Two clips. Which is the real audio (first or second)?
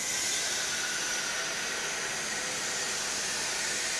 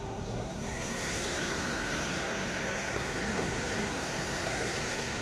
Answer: first